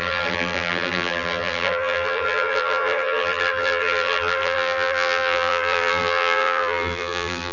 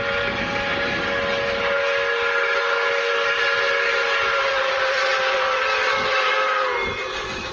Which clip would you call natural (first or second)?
second